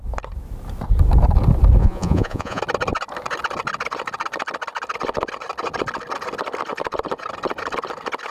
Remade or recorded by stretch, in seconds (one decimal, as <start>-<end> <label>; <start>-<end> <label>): 0.0-1.8 recorded; 1.8-2.6 remade; 2.6-8.3 recorded